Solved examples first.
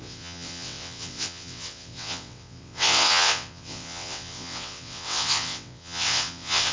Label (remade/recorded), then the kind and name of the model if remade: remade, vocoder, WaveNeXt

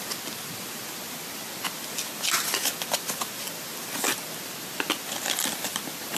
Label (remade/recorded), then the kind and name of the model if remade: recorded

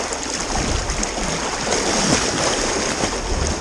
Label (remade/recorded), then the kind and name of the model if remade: recorded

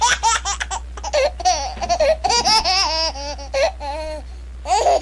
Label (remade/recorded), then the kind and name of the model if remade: recorded